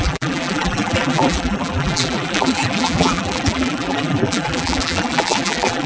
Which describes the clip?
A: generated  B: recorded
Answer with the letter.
A